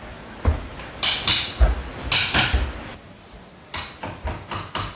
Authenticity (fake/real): real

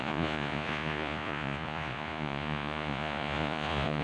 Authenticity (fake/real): fake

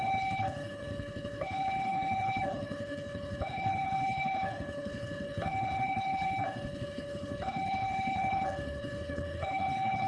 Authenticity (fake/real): fake